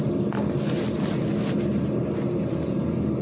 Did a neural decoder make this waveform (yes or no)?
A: no